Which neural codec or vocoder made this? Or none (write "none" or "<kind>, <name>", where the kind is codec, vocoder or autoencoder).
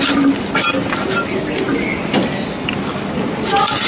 vocoder, BigVGAN v2